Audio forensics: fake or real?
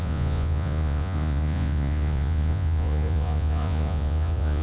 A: fake